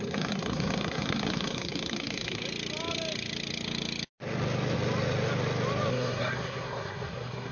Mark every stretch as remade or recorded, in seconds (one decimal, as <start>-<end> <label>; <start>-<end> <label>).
0.0-2.4 remade; 2.4-5.9 recorded; 5.9-7.5 remade